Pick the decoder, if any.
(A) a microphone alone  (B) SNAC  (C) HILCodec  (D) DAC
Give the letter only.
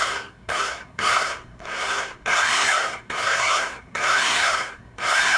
B